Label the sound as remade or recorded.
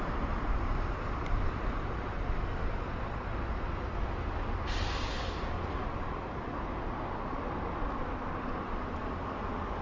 recorded